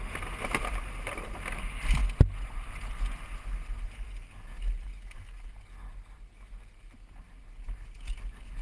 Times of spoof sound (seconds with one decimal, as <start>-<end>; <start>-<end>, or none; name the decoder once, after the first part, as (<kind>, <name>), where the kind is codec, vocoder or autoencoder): none